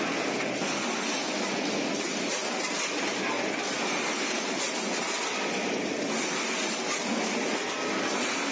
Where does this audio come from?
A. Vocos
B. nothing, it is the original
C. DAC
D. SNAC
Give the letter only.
B